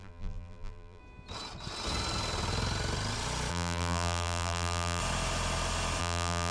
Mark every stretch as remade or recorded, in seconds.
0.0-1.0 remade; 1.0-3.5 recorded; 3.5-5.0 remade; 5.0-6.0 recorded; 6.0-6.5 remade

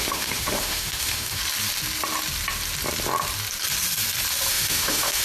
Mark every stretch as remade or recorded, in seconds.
0.0-1.4 remade; 1.4-4.5 recorded; 4.5-5.2 remade